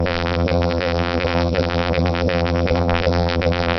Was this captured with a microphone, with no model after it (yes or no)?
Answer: no